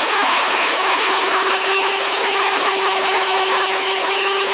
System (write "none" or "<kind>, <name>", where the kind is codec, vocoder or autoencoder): codec, HILCodec